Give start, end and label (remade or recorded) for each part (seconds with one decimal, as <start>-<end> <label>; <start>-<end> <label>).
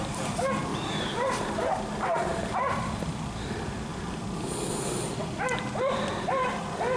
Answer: 0.0-0.7 recorded; 0.7-1.7 remade; 1.7-7.0 recorded